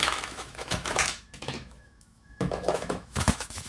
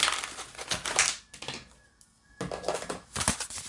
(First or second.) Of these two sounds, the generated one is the first